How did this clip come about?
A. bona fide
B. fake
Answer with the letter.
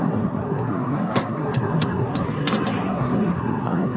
B